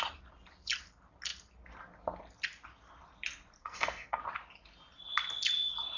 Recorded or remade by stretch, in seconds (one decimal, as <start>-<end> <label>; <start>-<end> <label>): 0.0-3.6 recorded; 3.6-4.2 remade; 4.2-6.0 recorded